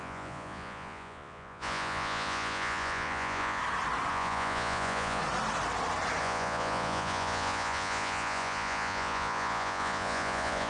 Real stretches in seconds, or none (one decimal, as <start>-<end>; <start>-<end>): 3.6-4.1; 5.2-6.2